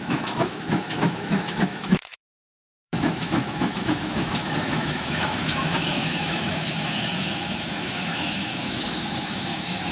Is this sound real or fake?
fake